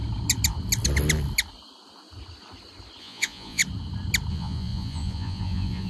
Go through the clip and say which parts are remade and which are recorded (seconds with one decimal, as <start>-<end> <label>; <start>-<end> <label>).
0.0-3.0 recorded; 3.0-3.6 remade; 3.6-4.3 recorded; 4.3-5.9 remade